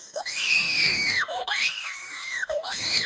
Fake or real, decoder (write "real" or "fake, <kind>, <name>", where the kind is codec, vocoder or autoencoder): fake, codec, DAC